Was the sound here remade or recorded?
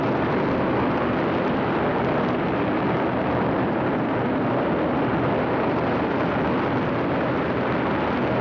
recorded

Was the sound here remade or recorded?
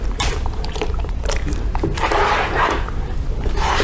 remade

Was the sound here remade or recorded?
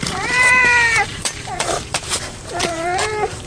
remade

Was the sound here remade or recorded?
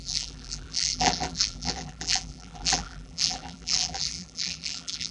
remade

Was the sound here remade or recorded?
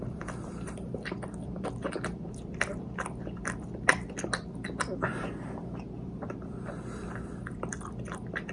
remade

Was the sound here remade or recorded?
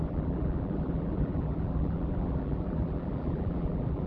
remade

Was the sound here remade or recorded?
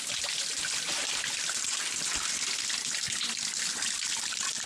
recorded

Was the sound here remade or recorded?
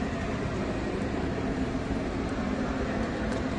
remade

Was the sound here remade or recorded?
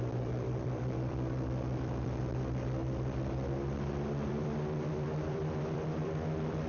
remade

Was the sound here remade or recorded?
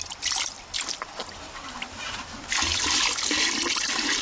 remade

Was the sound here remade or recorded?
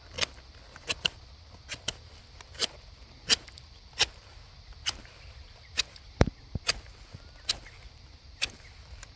remade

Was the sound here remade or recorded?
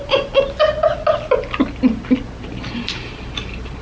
recorded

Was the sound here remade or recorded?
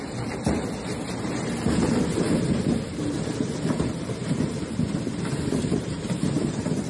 remade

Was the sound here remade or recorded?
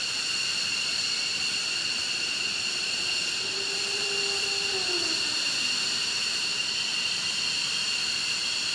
remade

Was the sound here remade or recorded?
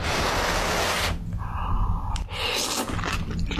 recorded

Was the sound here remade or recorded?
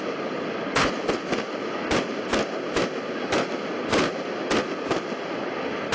recorded